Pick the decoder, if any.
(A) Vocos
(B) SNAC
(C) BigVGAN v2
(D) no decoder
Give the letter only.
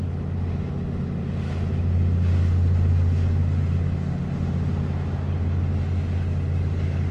D